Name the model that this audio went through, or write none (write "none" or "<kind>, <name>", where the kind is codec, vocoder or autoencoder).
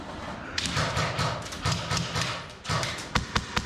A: none